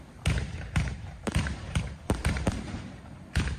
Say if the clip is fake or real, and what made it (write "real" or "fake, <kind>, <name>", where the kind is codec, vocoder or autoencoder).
fake, vocoder, BigVGAN v2